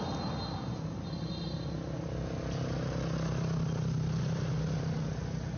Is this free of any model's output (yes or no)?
yes